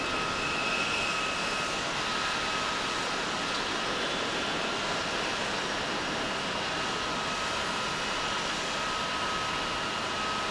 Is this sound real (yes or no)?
yes